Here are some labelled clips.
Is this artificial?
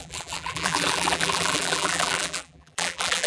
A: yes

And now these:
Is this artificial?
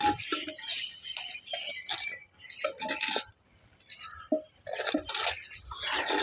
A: no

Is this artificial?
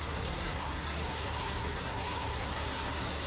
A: yes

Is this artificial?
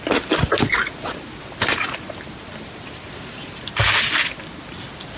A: no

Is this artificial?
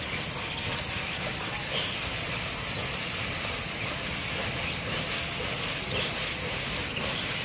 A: yes